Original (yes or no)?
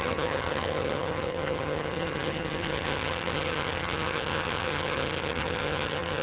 no